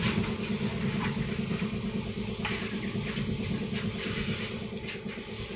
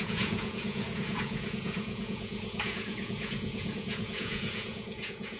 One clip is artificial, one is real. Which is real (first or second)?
first